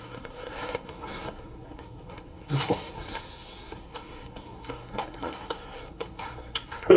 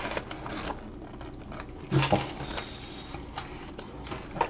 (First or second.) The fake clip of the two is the first